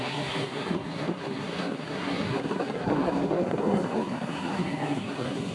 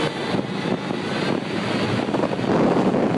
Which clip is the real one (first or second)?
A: second